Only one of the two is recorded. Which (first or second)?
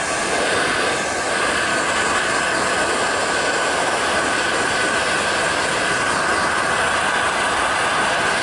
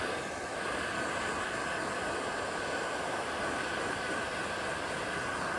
first